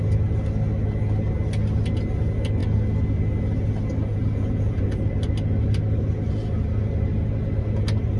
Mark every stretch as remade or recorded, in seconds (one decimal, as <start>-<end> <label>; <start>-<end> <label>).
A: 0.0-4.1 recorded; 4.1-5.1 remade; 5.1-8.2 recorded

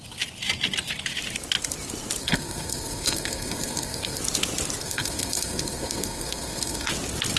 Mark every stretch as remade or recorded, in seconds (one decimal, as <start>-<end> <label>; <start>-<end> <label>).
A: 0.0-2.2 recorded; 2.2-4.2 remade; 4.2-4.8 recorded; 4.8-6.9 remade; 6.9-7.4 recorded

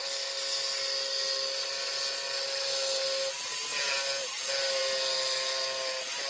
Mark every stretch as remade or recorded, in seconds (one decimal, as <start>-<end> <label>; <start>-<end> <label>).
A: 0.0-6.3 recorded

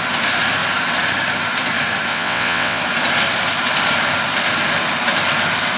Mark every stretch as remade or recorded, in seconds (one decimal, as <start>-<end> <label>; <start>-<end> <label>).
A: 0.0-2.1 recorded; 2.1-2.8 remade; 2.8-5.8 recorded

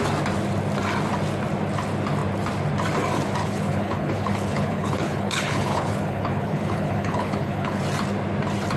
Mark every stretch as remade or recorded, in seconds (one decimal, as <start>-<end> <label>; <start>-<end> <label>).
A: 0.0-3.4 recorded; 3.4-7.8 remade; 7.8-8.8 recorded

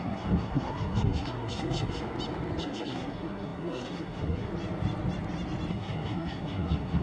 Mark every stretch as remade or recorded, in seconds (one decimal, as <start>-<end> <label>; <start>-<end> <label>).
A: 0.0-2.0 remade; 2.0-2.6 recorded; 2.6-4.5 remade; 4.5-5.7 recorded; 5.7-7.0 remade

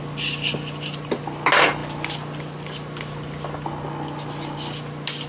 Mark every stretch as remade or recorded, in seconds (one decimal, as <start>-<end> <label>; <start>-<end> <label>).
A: 0.0-5.3 recorded

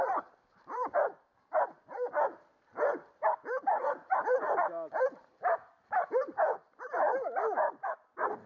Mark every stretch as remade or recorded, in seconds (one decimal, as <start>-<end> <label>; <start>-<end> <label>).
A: 0.0-8.5 recorded